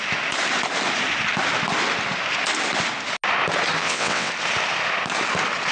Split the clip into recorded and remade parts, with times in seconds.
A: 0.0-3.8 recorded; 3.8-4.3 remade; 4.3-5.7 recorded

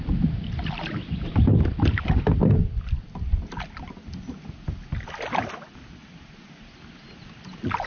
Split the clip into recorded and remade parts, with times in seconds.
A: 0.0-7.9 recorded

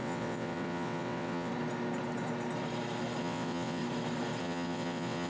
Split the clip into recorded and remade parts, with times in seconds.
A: 0.0-1.5 remade; 1.5-3.2 recorded; 3.2-3.8 remade; 3.8-4.4 recorded; 4.4-5.3 remade

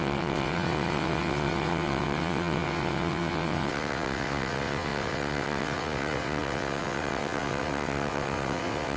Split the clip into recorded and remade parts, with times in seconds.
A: 0.0-9.0 remade

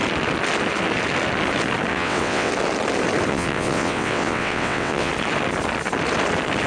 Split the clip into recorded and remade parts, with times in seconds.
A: 0.0-1.9 recorded; 1.9-2.5 remade; 2.5-3.3 recorded; 3.3-5.1 remade; 5.1-6.7 recorded

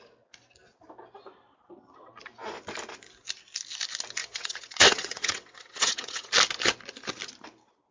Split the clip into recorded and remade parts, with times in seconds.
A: 0.0-4.2 recorded; 4.2-6.3 remade; 6.3-7.9 recorded